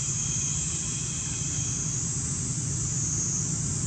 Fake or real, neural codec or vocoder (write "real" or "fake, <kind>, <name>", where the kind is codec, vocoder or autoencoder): real